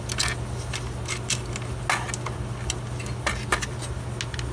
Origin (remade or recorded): recorded